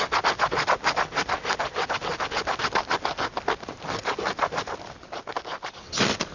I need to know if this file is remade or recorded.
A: recorded